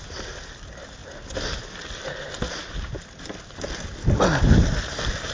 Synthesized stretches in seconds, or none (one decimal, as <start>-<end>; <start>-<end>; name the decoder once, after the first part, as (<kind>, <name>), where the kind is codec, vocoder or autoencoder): none